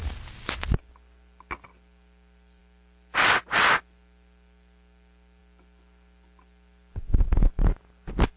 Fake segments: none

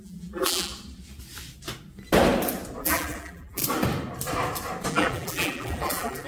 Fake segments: 0.0-0.7 (vocoder, BigVGAN v2); 2.8-3.6; 4.9-6.3

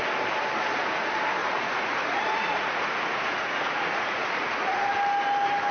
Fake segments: 1.4-4.8 (vocoder, Vocos)

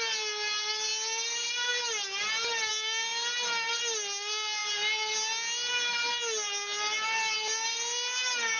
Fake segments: none

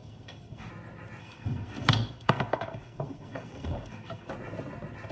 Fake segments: 0.0-0.7 (codec, SNAC); 1.2-4.3

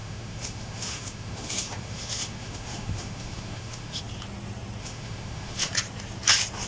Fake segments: 0.0-4.0 (autoencoder, DAC-VAE); 4.8-5.7